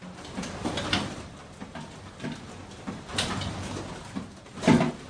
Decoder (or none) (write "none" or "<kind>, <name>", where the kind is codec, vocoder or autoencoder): none